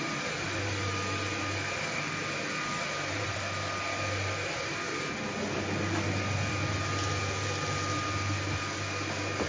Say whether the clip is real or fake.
real